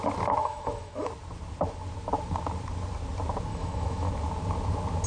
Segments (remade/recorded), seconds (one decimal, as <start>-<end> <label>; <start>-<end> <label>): 0.0-0.4 recorded; 0.4-1.1 remade; 1.1-3.5 recorded; 3.5-4.1 remade; 4.1-5.1 recorded